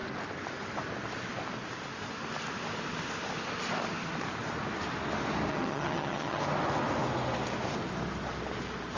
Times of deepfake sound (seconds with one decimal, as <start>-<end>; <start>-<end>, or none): 5.5-6.4